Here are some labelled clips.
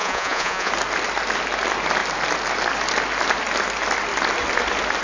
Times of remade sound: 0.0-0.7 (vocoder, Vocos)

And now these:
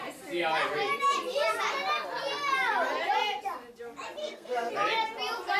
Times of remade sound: 4.2-4.7 (codec, SNAC)

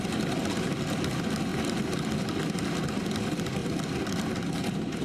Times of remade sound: 1.5-2.9 (vocoder, BigVGAN v2)

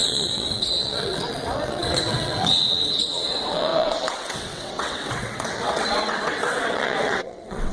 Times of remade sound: 0.0-7.7 (vocoder, WaveNeXt)

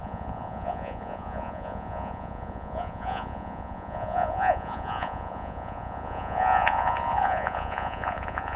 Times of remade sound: 0.0-8.6 (vocoder, Vocos)

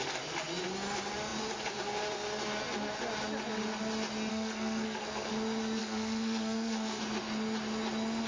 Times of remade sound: 4.3-5.3 (codec, SNAC); 5.8-7.0

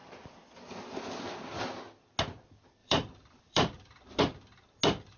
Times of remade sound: 2.8-4.2 (vocoder, BigVGAN v2)

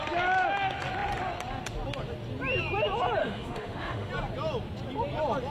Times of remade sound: 3.2-4.1 (autoencoder, DAC-VAE)